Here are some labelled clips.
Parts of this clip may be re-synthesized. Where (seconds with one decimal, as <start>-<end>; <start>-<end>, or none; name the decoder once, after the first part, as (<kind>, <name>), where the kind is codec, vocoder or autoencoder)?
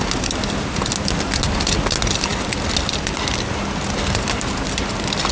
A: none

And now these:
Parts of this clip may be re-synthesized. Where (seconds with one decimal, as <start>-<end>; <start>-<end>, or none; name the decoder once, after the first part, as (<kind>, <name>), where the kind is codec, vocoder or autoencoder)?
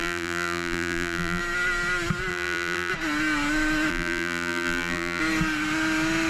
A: 0.0-1.4 (vocoder, BigVGAN v2); 2.3-2.9; 3.9-5.2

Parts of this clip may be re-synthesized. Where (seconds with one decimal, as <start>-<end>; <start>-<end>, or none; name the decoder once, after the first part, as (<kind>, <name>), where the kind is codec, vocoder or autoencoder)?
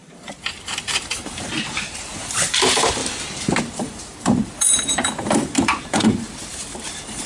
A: 0.0-3.0 (vocoder, BigVGAN v2); 3.6-7.3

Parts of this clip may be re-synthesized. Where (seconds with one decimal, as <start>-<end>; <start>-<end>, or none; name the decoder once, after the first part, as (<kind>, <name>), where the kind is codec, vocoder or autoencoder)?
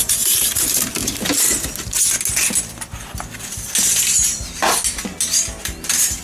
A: 0.0-1.0 (vocoder, BigVGAN v2); 4.0-4.6; 5.6-6.2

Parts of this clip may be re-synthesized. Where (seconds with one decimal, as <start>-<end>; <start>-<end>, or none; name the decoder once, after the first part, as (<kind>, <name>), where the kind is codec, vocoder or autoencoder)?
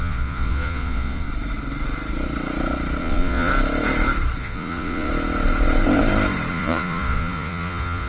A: 0.0-1.3 (vocoder, Vocos); 3.0-3.5; 4.4-5.1; 6.5-8.1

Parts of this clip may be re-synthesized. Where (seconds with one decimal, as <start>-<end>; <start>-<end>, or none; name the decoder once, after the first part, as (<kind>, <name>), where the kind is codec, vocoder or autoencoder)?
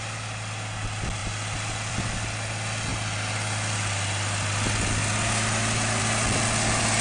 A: none